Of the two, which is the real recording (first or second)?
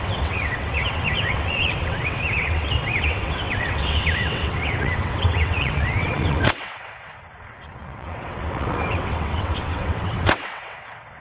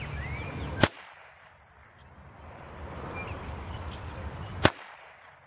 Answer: second